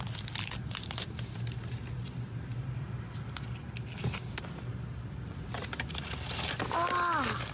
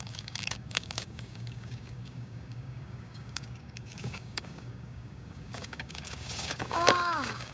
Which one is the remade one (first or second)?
second